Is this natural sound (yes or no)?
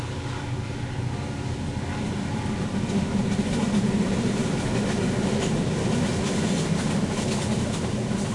yes